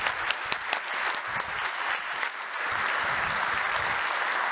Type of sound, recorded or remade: recorded